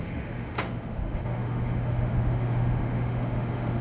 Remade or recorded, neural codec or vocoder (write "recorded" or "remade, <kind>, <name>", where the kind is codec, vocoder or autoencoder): remade, autoencoder, DAC-VAE